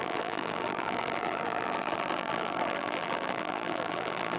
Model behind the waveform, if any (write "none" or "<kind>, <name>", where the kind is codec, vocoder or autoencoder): vocoder, BigVGAN v2